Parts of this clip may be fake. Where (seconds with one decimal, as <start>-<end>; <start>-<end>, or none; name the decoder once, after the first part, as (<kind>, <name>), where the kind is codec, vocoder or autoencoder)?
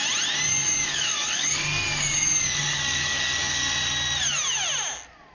0.5-3.7 (codec, DAC)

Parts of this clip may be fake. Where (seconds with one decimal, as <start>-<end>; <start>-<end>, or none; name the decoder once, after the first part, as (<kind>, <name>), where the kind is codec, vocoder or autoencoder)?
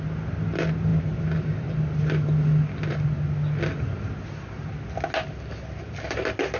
none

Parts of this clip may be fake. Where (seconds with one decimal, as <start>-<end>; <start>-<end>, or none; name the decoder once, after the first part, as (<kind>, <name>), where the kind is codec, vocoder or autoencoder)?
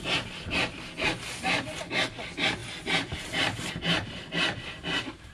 2.6-5.3 (vocoder, BigVGAN v2)